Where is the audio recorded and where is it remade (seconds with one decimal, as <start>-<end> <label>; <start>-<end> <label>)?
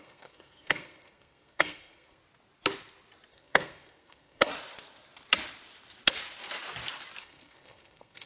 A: 0.0-2.2 remade; 2.2-3.3 recorded; 3.3-4.5 remade; 4.5-7.2 recorded; 7.2-8.3 remade